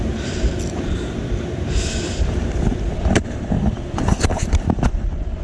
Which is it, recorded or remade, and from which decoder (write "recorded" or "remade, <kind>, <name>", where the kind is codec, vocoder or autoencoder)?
remade, vocoder, BigVGAN v2